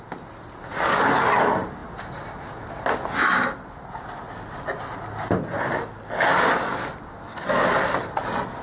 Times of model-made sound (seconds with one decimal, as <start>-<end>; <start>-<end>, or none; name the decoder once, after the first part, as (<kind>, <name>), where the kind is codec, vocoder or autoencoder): none